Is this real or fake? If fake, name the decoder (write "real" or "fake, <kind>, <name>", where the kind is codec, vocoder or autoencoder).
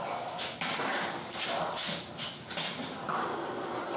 real